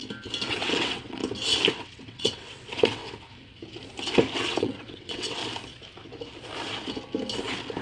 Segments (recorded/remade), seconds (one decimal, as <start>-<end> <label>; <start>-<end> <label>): 0.0-0.5 recorded; 0.5-1.2 remade; 1.2-1.7 recorded; 1.7-3.0 remade; 3.0-4.6 recorded; 4.6-5.4 remade; 5.4-7.8 recorded